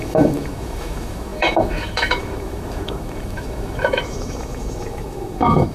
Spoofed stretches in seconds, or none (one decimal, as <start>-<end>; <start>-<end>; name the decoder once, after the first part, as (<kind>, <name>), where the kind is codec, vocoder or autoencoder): 0.0-5.7 (autoencoder, DAC-VAE)